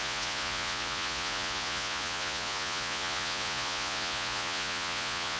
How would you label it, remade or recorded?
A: remade